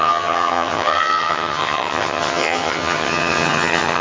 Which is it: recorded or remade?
remade